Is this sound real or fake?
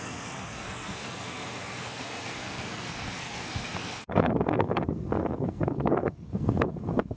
fake